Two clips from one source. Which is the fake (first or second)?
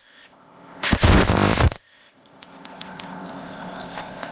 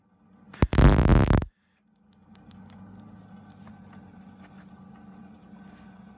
first